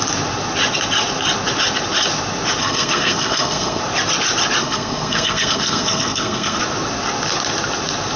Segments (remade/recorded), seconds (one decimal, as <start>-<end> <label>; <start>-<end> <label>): 0.0-2.6 recorded; 2.6-3.8 remade; 3.8-4.6 recorded; 4.6-6.6 remade; 6.6-8.2 recorded